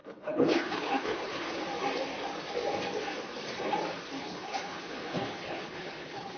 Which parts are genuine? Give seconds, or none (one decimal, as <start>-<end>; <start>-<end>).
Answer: 1.6-4.2